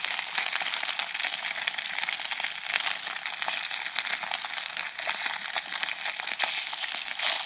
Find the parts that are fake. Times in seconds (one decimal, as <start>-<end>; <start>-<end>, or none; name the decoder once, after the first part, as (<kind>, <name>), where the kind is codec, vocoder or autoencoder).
none